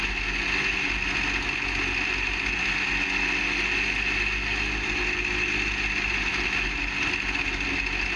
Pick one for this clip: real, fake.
real